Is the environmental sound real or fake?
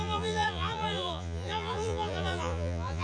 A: fake